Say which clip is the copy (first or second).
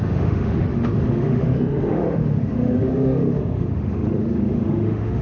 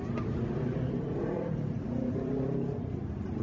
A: first